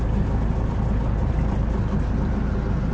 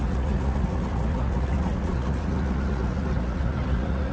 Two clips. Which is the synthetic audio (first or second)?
second